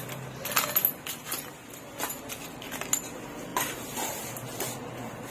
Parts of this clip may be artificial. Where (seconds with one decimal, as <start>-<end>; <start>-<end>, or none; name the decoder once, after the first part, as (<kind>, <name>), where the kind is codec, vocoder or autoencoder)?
3.5-4.3 (vocoder, BigVGAN v2)

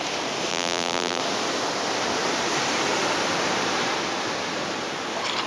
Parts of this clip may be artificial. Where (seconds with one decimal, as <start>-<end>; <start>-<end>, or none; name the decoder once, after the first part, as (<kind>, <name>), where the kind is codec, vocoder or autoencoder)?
0.5-1.2 (vocoder, BigVGAN v2)

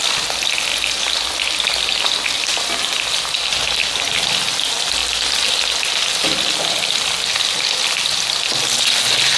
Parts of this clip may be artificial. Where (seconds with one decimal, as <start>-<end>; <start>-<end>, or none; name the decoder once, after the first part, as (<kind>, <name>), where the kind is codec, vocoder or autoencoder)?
3.8-4.3 (vocoder, BigVGAN v2); 5.0-5.6

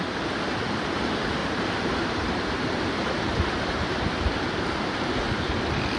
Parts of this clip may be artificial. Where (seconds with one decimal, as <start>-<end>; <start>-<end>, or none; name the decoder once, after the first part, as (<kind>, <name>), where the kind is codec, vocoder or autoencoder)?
1.4-5.0 (vocoder, BigVGAN v2)

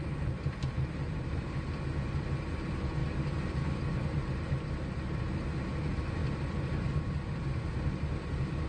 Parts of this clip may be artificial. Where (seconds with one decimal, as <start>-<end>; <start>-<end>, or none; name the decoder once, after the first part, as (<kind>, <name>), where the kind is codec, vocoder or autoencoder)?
0.0-1.6 (vocoder, BigVGAN v2); 6.2-8.1